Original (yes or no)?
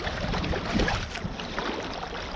yes